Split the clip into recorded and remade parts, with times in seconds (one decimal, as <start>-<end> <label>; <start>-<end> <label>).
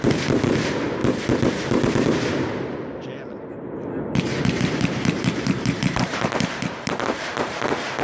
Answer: 0.0-1.0 remade; 1.0-4.4 recorded; 4.4-8.0 remade